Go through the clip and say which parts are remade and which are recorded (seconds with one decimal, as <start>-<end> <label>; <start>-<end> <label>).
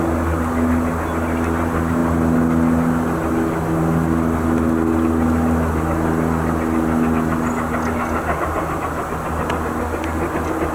0.0-10.7 recorded